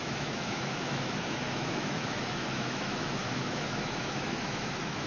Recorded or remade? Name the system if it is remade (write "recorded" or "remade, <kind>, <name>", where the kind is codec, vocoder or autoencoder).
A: remade, autoencoder, DAC-VAE